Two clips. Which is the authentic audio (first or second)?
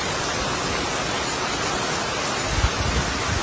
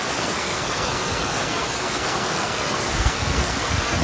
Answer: first